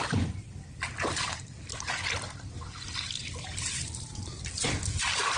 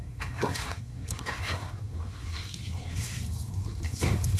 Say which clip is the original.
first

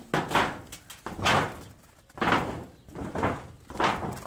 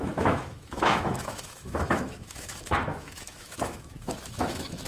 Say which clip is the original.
first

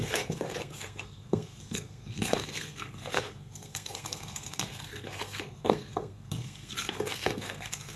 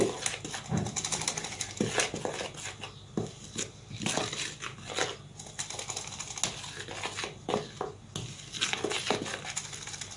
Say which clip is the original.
second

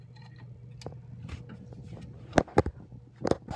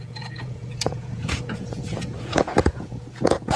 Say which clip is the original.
first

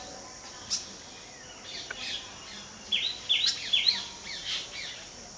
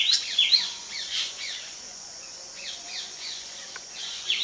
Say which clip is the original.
first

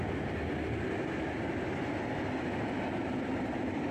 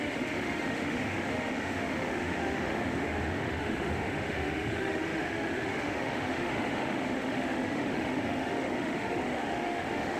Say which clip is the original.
first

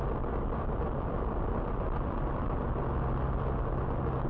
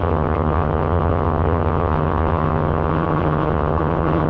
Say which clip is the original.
first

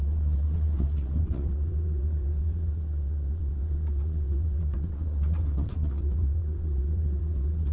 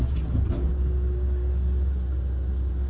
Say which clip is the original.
second